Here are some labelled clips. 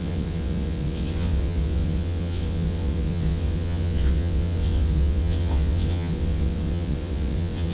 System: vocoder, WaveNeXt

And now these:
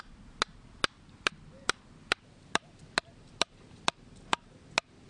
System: none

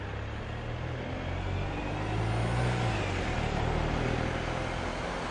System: none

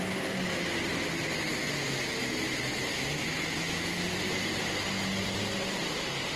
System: none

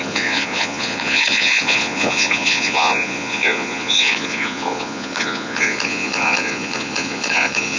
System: vocoder, Vocos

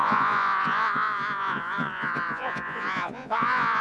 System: vocoder, Vocos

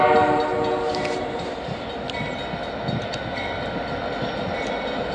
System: none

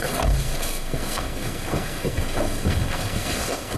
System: codec, SNAC